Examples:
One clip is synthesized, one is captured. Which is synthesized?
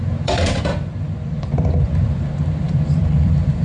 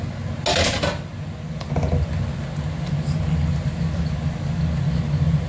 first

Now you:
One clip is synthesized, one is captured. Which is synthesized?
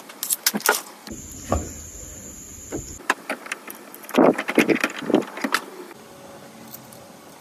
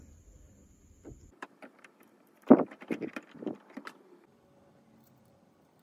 second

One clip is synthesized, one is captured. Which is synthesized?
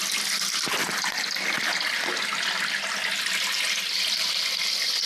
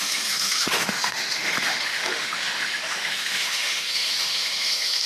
second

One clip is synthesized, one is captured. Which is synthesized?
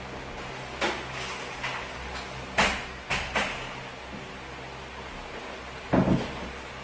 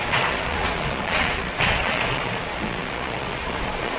second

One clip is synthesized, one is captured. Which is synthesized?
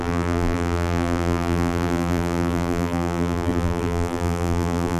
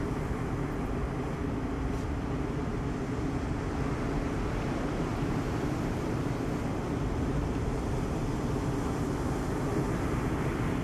first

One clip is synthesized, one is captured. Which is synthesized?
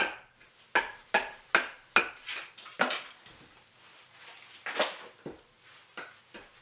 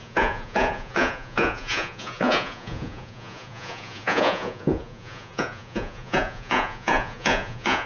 second